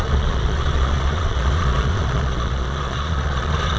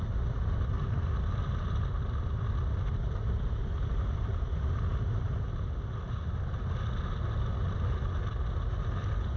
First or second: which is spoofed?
first